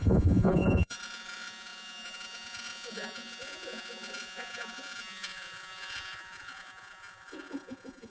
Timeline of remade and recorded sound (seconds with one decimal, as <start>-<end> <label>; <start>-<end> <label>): 0.0-8.1 remade